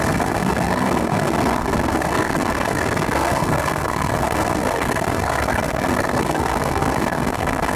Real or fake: fake